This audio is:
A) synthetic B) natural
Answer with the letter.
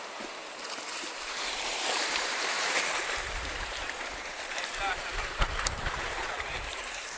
A